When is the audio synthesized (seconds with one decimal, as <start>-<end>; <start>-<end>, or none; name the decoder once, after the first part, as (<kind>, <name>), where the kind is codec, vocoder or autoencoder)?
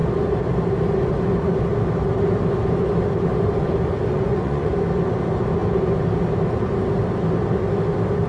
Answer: 4.1-4.7 (vocoder, Vocos)